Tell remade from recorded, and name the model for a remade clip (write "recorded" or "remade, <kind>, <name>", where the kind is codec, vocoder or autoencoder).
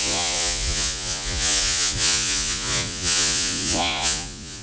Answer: remade, vocoder, Vocos